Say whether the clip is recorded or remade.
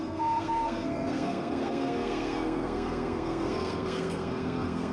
remade